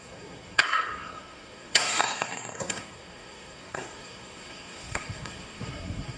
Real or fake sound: fake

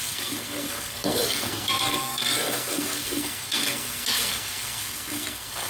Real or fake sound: fake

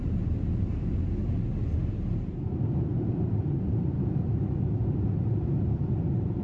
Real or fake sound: real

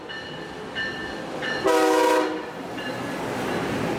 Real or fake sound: real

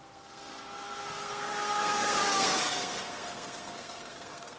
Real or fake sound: fake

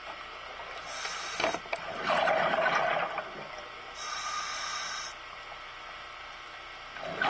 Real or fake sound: real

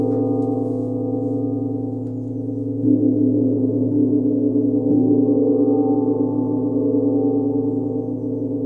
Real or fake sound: real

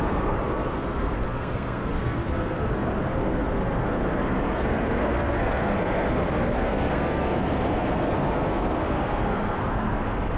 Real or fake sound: fake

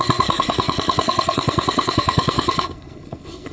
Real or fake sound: fake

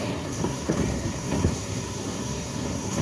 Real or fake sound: fake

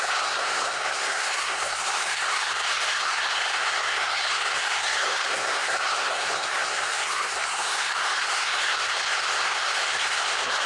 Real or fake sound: fake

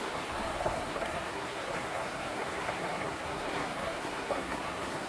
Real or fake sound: fake